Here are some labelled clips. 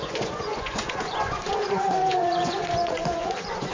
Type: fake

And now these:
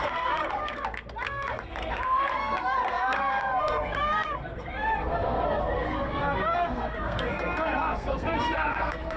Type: fake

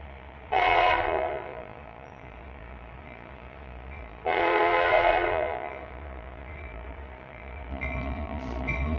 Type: fake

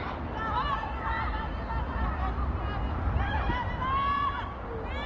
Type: real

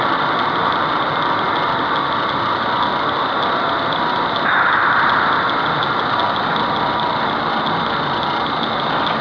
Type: real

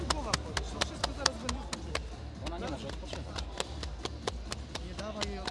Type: real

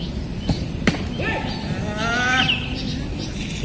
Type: real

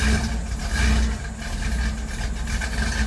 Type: real